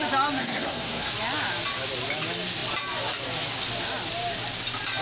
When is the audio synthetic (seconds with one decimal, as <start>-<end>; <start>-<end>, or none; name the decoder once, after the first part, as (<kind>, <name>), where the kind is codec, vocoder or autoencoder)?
0.4-1.1 (codec, SNAC)